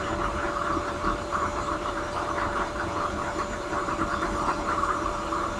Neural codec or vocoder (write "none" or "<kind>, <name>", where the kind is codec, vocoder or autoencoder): vocoder, BigVGAN v2